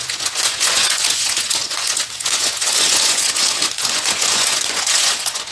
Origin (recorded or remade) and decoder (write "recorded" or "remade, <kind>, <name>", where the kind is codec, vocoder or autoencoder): remade, vocoder, Vocos